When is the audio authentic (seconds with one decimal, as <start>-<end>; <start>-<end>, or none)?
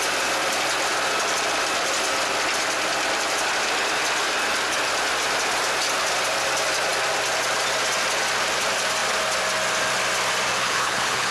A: 0.0-10.6